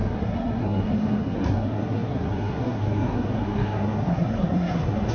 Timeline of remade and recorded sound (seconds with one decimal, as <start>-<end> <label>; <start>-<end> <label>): 0.0-5.1 remade